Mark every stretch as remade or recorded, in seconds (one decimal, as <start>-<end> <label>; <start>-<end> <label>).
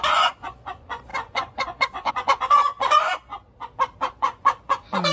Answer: 0.0-3.3 remade; 3.3-4.1 recorded; 4.1-5.1 remade